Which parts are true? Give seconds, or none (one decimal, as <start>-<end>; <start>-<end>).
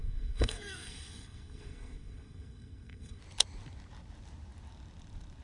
3.2-5.4